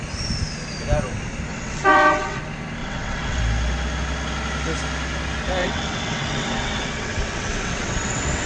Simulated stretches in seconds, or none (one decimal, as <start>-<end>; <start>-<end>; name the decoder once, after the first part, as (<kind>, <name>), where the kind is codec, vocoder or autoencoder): 1.5-2.4 (vocoder, WaveNeXt); 2.8-3.4; 5.6-8.5